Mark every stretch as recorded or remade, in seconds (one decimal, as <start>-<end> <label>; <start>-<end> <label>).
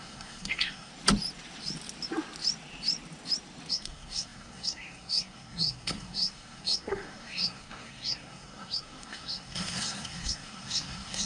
0.0-0.9 remade; 0.9-3.7 recorded; 3.7-11.3 remade